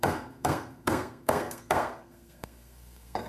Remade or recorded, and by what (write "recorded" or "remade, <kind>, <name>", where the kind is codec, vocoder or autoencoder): remade, codec, SNAC